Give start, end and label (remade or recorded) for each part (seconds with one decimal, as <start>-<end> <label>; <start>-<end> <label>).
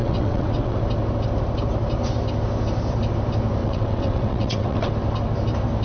0.0-0.8 remade; 0.8-3.6 recorded; 3.6-4.9 remade; 4.9-5.8 recorded